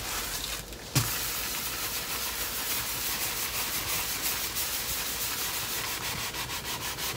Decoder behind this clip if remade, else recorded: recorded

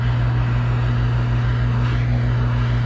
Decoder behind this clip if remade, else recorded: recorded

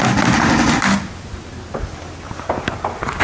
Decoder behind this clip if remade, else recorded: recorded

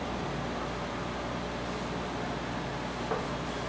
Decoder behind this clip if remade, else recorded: recorded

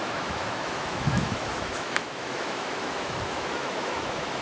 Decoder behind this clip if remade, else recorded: remade, autoencoder, DAC-VAE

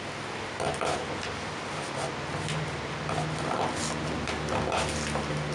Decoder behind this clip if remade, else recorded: recorded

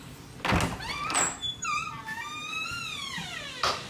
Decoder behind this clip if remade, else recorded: recorded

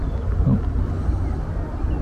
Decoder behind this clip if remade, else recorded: recorded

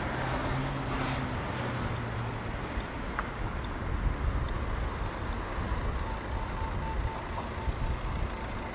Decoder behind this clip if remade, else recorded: recorded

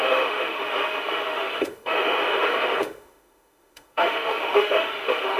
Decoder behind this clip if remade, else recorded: remade, autoencoder, DAC-VAE